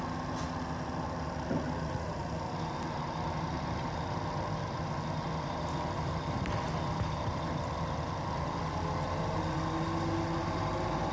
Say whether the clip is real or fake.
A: real